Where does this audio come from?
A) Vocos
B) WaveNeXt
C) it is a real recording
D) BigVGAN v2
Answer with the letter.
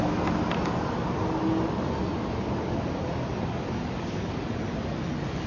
C